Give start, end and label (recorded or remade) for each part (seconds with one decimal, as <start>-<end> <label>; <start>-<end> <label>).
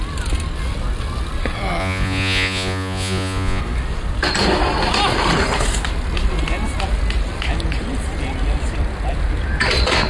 0.0-1.8 recorded; 1.8-3.6 remade; 3.6-10.1 recorded